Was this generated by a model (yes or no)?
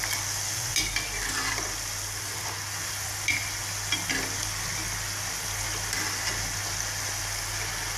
no